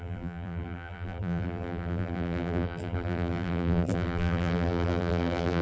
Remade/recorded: remade